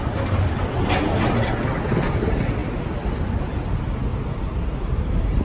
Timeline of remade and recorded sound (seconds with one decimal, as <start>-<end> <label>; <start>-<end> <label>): 0.0-4.1 recorded; 4.1-5.4 remade